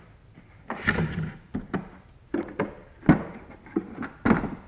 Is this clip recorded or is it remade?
recorded